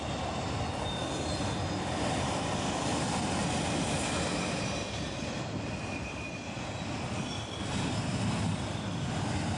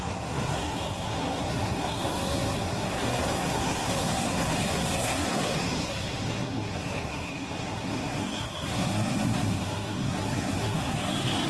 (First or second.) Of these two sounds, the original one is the first